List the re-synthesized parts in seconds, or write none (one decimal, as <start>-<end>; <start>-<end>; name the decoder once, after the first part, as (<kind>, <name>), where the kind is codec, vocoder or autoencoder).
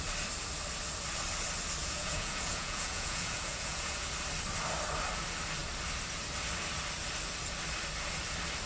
1.8-4.1 (vocoder, Vocos)